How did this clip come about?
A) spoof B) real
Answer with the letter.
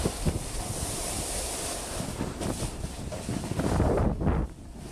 B